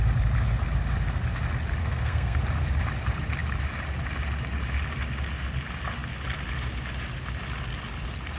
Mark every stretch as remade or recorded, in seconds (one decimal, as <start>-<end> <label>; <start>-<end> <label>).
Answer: 0.0-1.8 recorded; 1.8-2.4 remade; 2.4-8.4 recorded